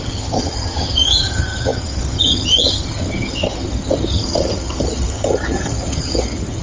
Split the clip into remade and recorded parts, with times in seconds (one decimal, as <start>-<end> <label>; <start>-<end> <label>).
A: 0.0-6.6 remade